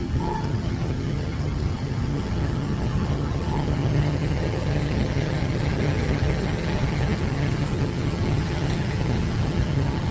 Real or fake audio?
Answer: fake